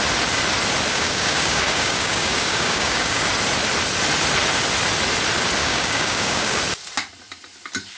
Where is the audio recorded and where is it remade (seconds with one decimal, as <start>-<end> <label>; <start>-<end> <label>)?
0.0-0.9 recorded; 0.9-3.3 remade; 3.3-5.6 recorded; 5.6-6.6 remade; 6.6-8.0 recorded